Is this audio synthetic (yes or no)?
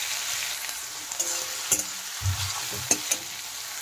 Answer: no